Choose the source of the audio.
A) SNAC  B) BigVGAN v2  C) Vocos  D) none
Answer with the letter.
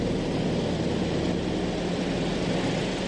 D